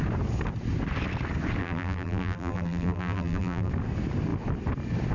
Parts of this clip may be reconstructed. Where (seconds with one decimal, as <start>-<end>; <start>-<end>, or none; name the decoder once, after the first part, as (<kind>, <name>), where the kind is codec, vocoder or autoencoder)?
1.6-3.7 (vocoder, BigVGAN v2)